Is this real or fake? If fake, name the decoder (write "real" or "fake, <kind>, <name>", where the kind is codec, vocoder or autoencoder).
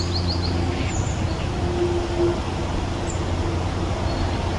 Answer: real